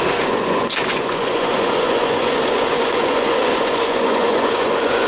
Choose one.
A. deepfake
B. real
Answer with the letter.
A